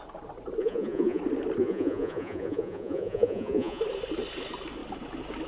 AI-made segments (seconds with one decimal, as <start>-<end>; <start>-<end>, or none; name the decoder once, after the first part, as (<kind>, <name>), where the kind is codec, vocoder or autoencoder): 0.6-1.2 (vocoder, Vocos); 1.6-3.8